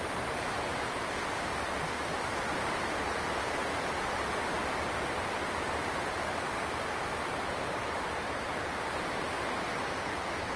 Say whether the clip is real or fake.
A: fake